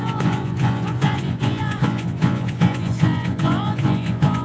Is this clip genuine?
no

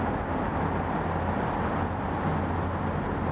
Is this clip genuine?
yes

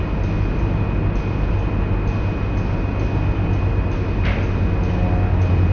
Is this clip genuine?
yes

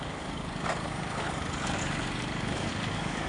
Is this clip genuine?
no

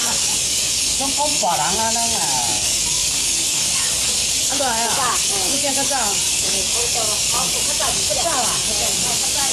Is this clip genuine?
no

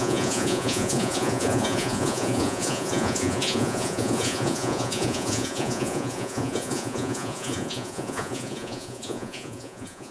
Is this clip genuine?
no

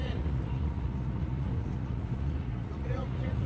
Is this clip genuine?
no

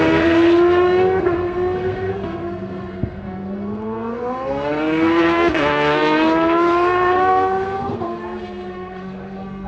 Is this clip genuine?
no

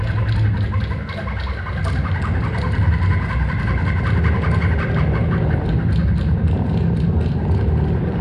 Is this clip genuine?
yes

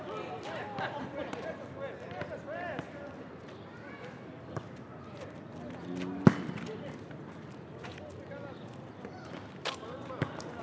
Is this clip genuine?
yes